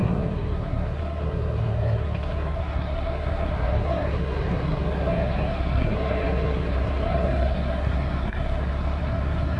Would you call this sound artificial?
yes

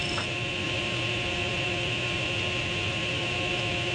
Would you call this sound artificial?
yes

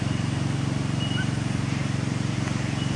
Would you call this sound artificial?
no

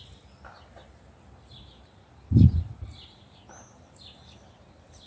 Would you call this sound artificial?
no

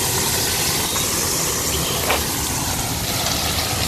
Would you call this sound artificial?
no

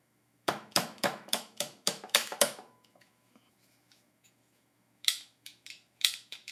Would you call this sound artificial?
yes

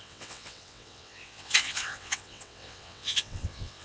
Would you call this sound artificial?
yes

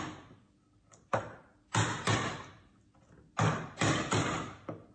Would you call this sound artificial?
no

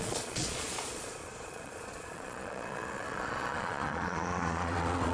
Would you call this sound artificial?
yes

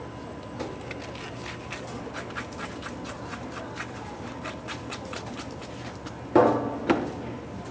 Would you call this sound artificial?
no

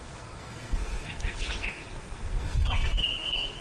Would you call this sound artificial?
yes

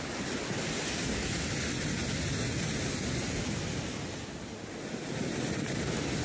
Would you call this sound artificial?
no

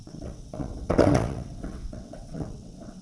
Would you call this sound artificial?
yes